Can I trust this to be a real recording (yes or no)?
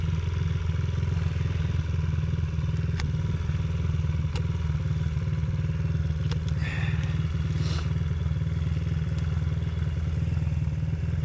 yes